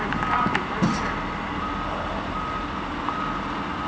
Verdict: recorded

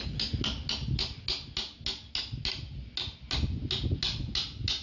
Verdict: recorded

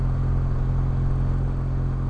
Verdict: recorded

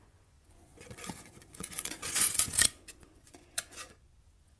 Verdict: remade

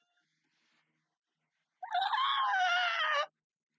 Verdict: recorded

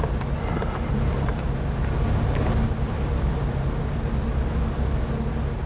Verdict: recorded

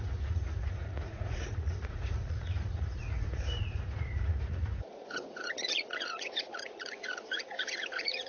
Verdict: remade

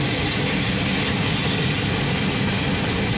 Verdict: recorded